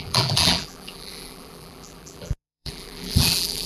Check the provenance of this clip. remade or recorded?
remade